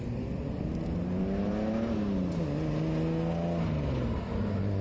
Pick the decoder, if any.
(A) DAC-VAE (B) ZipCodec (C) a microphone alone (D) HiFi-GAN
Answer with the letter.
C